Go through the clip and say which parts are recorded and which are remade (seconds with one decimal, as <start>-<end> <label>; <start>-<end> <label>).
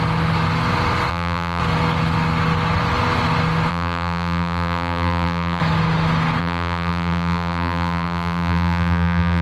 0.0-1.1 recorded; 1.1-1.6 remade; 1.6-3.7 recorded; 3.7-5.6 remade; 5.6-6.4 recorded; 6.4-9.4 remade